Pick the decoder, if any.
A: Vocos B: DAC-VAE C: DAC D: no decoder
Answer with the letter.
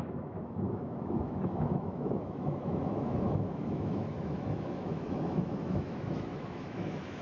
B